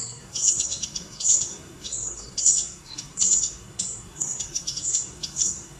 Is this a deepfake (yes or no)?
yes